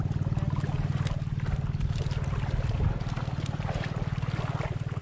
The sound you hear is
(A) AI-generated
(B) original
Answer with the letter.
B